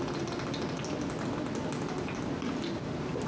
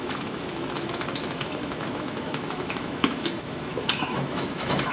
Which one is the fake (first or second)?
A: second